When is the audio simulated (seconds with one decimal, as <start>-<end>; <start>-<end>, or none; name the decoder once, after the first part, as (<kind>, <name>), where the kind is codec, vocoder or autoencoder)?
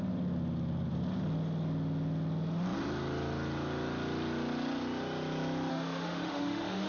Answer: 5.7-6.9 (autoencoder, DAC-VAE)